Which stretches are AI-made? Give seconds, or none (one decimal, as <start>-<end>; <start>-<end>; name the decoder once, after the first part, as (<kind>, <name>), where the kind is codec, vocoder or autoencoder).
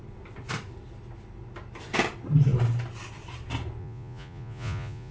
3.8-5.1 (vocoder, Vocos)